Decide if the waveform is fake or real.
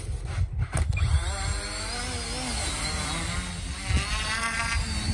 real